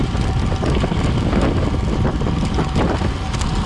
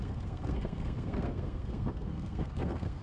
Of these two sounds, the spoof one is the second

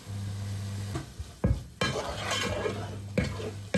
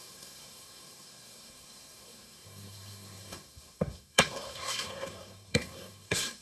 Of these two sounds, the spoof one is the second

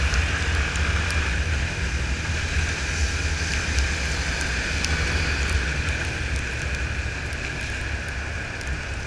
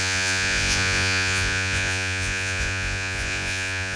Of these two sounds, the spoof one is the second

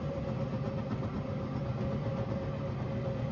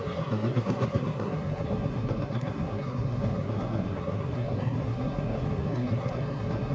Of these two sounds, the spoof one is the second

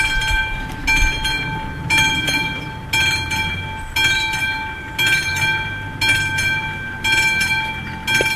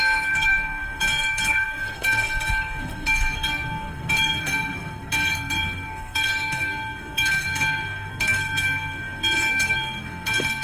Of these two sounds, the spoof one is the second